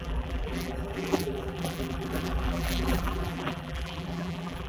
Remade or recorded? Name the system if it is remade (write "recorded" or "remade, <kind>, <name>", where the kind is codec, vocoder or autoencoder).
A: remade, vocoder, BigVGAN v2